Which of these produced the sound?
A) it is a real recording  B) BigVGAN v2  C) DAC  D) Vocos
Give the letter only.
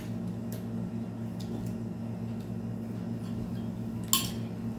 A